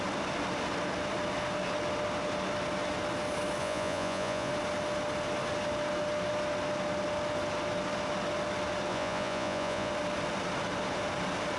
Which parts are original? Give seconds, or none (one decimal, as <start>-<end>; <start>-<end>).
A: 0.0-3.6; 4.5-8.9; 9.9-11.6